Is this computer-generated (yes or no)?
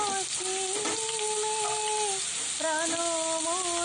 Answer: no